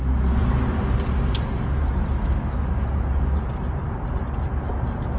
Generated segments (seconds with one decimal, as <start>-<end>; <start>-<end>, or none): none